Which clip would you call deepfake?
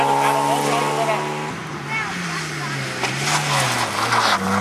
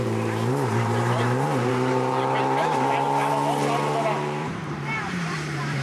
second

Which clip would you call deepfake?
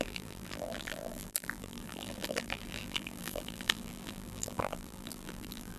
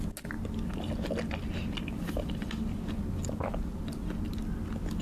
first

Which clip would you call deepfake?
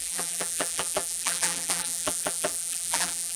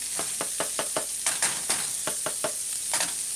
first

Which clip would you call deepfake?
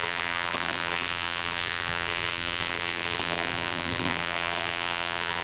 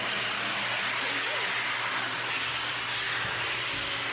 first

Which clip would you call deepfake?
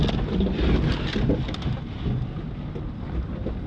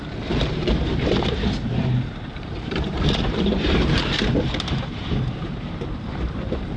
second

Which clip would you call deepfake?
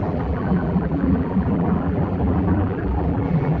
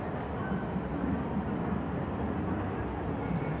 first